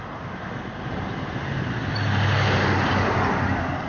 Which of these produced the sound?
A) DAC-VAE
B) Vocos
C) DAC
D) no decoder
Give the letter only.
D